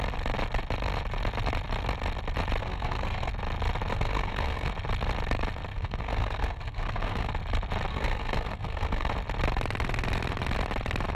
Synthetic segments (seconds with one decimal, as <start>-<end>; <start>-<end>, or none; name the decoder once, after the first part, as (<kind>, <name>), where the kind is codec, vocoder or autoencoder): 2.6-3.3 (codec, SNAC); 3.9-4.7; 5.7-7.3; 7.9-9.1